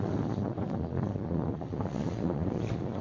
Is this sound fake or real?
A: fake